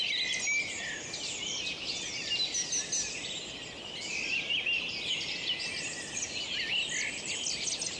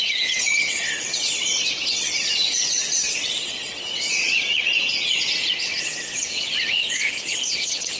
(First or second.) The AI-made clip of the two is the second